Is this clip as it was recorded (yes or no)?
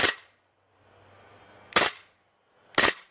yes